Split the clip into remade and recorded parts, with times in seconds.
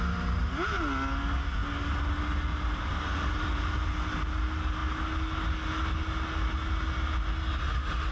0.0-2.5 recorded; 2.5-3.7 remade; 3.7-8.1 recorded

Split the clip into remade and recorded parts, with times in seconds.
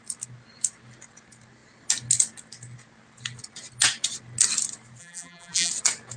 0.0-5.0 recorded; 5.0-5.7 remade; 5.7-6.2 recorded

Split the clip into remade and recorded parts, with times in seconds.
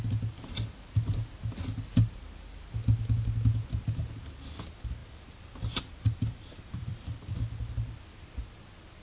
0.0-5.0 recorded; 5.0-7.2 remade; 7.2-9.0 recorded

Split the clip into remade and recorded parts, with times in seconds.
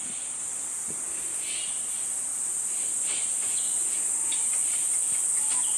0.0-2.3 recorded; 2.3-3.1 remade; 3.1-5.8 recorded